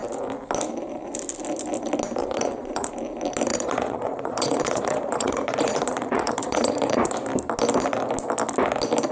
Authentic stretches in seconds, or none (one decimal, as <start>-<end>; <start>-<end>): 0.0-2.2; 2.9-3.5; 7.1-9.1